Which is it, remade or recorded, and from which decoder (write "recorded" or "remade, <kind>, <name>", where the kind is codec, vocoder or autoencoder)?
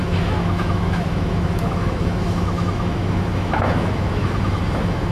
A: remade, autoencoder, DAC-VAE